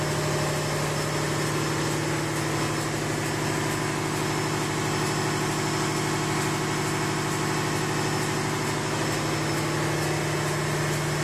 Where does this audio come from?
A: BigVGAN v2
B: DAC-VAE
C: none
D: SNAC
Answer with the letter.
C